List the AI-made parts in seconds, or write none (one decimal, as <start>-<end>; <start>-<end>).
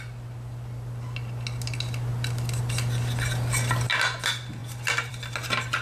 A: none